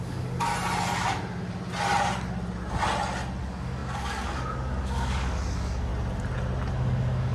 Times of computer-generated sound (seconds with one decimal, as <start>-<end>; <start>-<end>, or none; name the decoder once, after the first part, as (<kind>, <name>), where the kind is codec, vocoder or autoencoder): 0.0-0.5 (codec, DAC); 3.4-5.9; 6.7-7.3